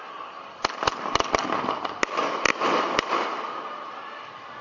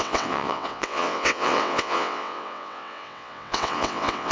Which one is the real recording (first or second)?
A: first